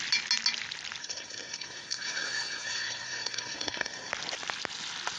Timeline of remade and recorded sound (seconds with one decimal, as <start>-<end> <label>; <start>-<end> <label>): 0.0-1.0 recorded; 1.0-4.1 remade; 4.1-5.2 recorded

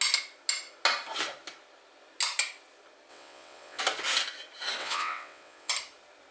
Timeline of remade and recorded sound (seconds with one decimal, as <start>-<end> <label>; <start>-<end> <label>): 0.0-3.1 recorded; 3.1-3.8 remade; 3.8-4.8 recorded; 4.8-5.7 remade; 5.7-6.3 recorded

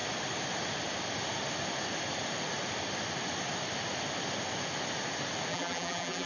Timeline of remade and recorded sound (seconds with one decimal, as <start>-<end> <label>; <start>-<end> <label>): 0.0-5.5 recorded; 5.5-6.3 remade

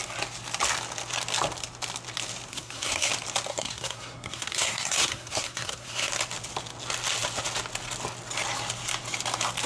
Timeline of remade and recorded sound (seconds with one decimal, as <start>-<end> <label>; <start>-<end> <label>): 0.0-2.5 recorded; 2.5-3.1 remade; 3.1-3.5 recorded; 3.5-6.1 remade; 6.1-9.7 recorded